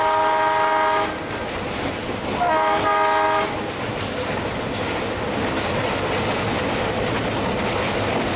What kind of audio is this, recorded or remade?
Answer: recorded